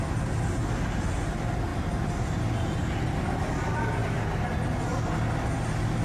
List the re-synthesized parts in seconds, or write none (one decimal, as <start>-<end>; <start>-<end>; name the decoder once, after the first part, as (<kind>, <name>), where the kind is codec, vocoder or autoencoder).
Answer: none